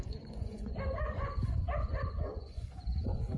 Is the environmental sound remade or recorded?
remade